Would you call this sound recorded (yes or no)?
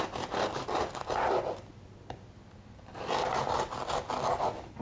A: yes